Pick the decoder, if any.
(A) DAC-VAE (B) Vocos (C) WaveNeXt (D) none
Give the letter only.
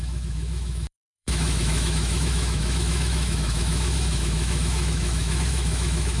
A